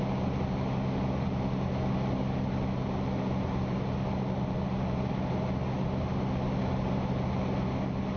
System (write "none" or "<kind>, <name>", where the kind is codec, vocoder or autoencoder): none